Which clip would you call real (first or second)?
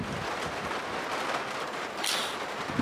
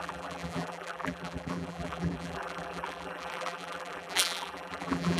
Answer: first